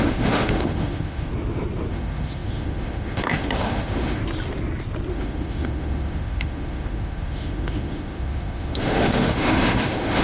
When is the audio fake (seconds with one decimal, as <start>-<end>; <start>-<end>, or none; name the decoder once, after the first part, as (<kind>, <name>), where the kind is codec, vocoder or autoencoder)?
0.0-1.3 (autoencoder, DAC-VAE); 1.9-4.2; 5.1-10.2